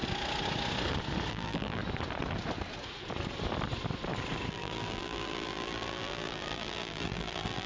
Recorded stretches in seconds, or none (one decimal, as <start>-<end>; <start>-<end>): 0.0-1.3; 1.8-4.5